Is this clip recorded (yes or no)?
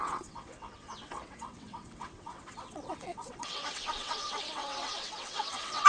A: no